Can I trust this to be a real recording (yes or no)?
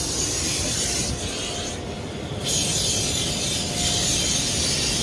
yes